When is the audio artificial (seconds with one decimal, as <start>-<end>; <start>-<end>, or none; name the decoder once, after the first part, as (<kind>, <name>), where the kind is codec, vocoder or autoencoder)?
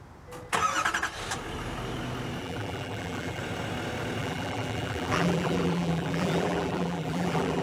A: 2.4-3.4 (vocoder, BigVGAN v2); 4.2-7.6